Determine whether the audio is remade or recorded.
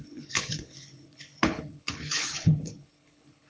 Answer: remade